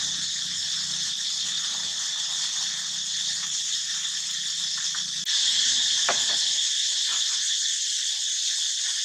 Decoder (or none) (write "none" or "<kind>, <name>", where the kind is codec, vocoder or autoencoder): none